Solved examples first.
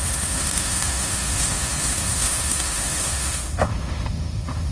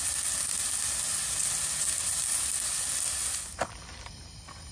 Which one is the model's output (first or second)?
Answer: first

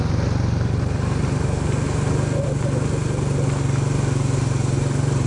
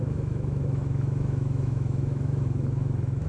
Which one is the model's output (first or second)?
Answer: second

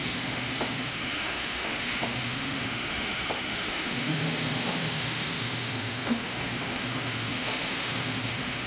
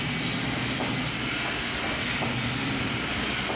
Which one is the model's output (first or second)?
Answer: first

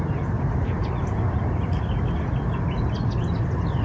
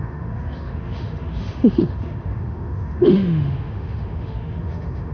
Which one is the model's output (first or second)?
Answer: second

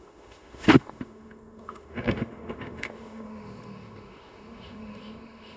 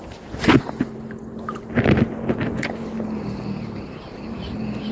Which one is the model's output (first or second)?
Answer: first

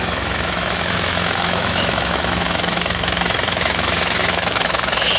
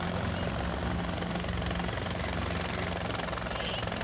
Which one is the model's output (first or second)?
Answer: first